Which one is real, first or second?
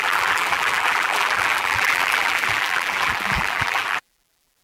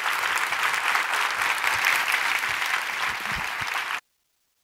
second